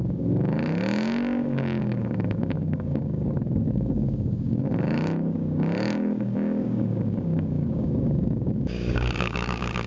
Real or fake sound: fake